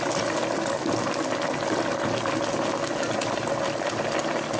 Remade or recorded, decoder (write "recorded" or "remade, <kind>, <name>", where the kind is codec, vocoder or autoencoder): recorded